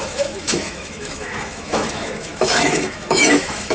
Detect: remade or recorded remade